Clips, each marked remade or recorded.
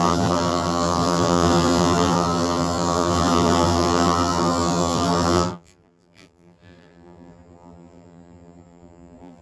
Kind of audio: remade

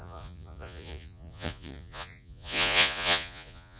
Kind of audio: remade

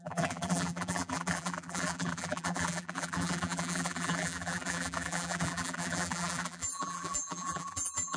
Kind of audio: remade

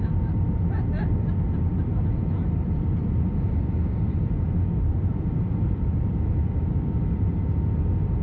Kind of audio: remade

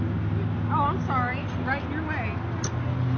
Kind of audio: recorded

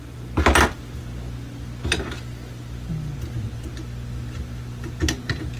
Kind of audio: recorded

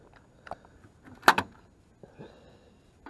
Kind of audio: recorded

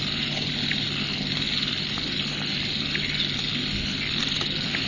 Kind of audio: recorded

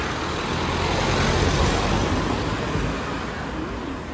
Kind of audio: recorded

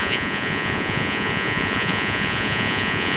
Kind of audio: remade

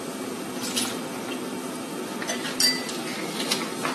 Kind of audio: recorded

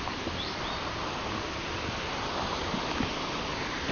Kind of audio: recorded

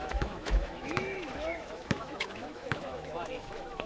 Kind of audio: remade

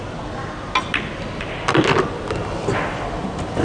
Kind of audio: recorded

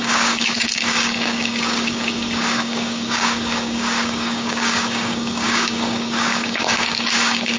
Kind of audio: remade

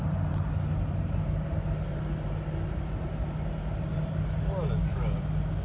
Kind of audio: recorded